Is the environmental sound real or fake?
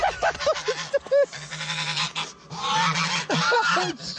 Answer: real